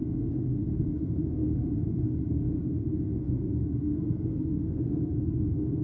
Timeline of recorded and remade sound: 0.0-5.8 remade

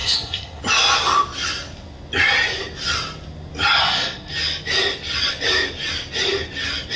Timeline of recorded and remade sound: 0.0-0.6 remade; 0.6-3.8 recorded; 3.8-4.3 remade; 4.3-7.0 recorded

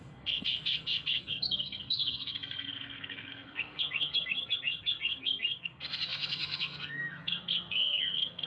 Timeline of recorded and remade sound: 0.0-8.5 remade

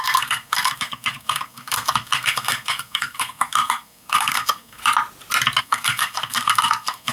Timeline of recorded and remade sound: 0.0-4.8 remade; 4.8-5.6 recorded; 5.6-7.1 remade

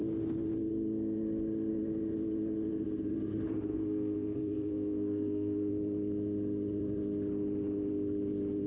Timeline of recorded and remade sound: 0.0-3.7 recorded; 3.7-5.7 remade; 5.7-8.7 recorded

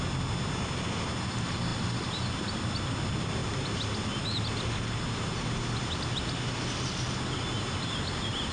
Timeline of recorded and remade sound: 0.0-8.5 recorded

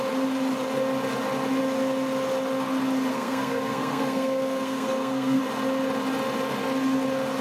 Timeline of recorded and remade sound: 0.0-3.1 recorded; 3.1-5.4 remade; 5.4-7.4 recorded

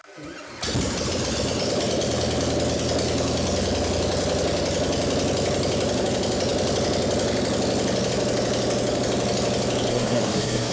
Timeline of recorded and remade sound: 0.0-9.9 recorded; 9.9-10.7 remade